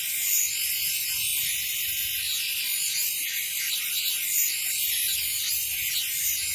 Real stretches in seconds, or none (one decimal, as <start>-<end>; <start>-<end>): 0.0-6.5